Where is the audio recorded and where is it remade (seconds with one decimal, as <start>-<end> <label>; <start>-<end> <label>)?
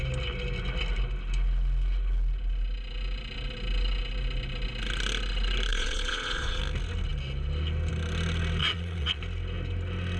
0.0-5.7 recorded; 5.7-6.6 remade; 6.6-8.6 recorded; 8.6-9.2 remade; 9.2-10.2 recorded